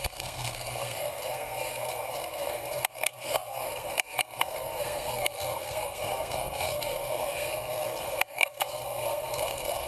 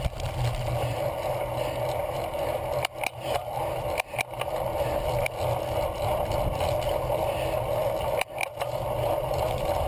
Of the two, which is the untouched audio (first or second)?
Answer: second